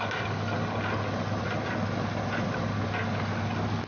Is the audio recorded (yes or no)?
yes